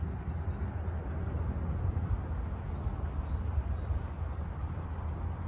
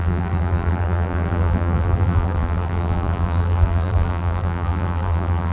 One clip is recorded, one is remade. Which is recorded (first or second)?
first